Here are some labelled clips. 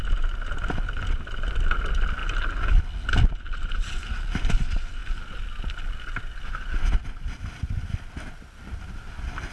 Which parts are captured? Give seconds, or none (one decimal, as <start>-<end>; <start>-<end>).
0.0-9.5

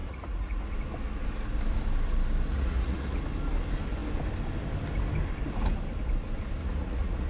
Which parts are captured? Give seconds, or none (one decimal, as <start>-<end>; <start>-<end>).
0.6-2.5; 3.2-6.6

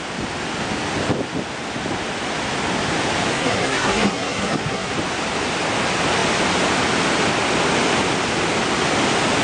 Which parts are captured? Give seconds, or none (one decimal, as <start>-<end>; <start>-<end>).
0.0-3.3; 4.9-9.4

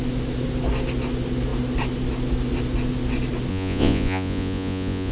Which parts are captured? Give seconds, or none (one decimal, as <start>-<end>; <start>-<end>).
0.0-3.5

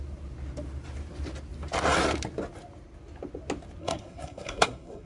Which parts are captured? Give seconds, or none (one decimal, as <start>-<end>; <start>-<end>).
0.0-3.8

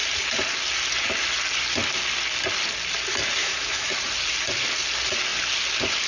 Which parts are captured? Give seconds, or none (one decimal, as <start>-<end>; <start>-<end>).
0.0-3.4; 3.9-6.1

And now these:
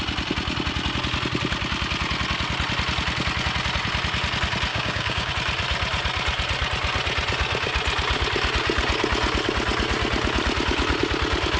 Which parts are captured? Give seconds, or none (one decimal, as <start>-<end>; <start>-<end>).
0.0-4.7; 5.3-11.6

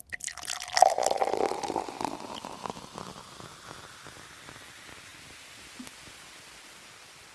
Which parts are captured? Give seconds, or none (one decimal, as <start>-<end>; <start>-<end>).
0.0-7.3